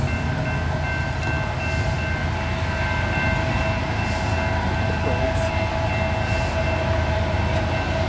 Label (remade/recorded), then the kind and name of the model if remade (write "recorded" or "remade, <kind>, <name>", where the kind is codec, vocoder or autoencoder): recorded